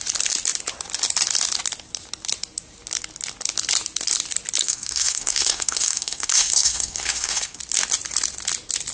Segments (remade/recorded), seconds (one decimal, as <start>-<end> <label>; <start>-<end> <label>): 0.0-4.6 recorded; 4.6-7.6 remade; 7.6-8.9 recorded